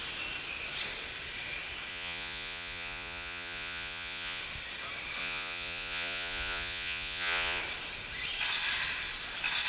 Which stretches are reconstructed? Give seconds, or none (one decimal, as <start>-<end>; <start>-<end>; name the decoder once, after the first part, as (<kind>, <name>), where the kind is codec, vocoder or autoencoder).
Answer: 1.9-4.4 (vocoder, Vocos); 5.2-7.6